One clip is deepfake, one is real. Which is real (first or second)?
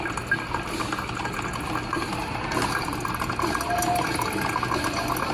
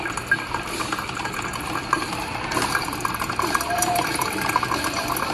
first